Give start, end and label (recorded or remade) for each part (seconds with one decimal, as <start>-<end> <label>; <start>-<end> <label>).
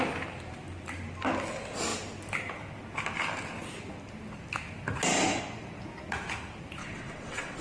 0.0-6.8 recorded; 6.8-7.6 remade